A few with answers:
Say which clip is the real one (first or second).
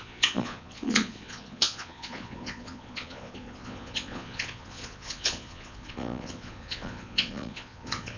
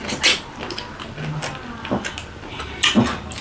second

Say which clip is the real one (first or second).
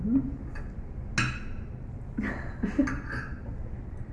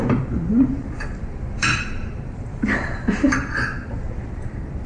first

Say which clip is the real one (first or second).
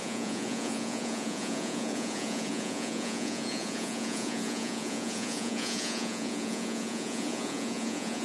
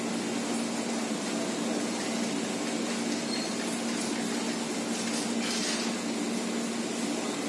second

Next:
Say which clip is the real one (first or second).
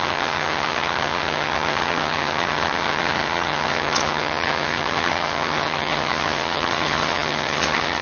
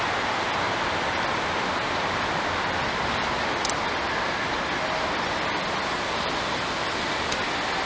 second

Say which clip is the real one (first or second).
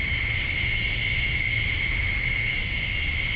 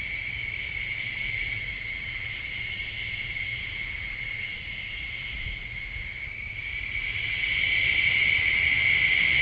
first